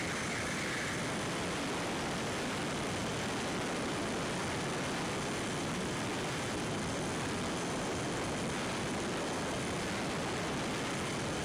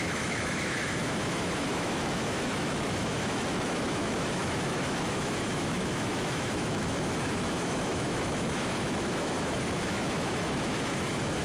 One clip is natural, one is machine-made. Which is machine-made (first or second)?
second